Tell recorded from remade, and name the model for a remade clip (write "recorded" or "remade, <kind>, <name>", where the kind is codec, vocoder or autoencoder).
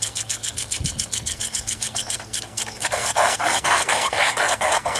remade, codec, SNAC